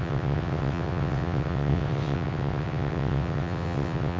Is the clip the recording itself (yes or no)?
no